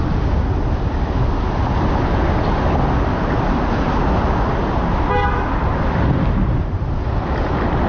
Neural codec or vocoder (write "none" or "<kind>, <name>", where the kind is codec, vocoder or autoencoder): none